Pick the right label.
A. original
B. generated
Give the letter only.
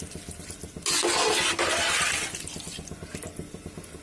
A